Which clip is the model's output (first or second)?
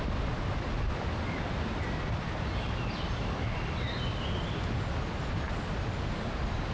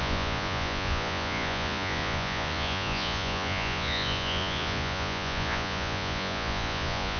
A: second